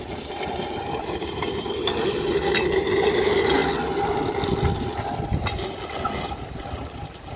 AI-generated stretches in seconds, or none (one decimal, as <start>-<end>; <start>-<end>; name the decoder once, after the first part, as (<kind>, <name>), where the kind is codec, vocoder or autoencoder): 0.0-3.6 (vocoder, BigVGAN v2); 6.2-7.4